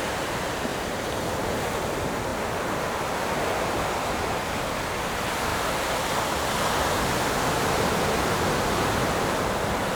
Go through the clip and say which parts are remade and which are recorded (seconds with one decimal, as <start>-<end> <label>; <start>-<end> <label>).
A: 0.0-9.9 recorded